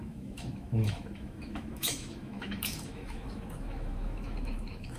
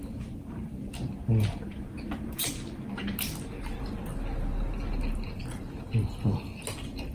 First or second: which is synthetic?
first